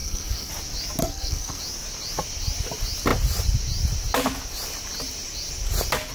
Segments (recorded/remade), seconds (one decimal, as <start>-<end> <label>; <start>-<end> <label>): 0.0-0.5 remade; 0.5-1.0 recorded; 1.0-1.6 remade; 1.6-6.1 recorded